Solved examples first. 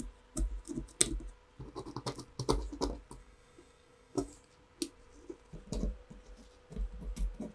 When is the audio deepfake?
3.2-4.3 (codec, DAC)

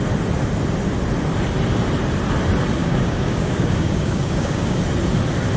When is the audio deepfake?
2.8-4.8 (codec, DAC)

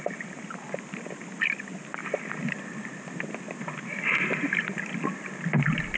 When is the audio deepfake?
none

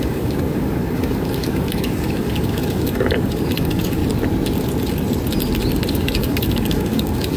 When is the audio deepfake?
0.0-4.0 (codec, DAC); 5.9-7.4

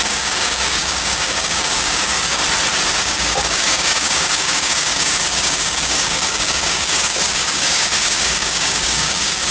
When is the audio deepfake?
0.0-2.4 (codec, DAC); 3.0-9.5

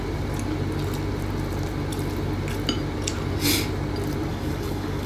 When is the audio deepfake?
4.3-5.1 (codec, DAC)